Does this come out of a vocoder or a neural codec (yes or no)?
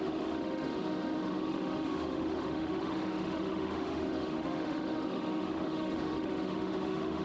yes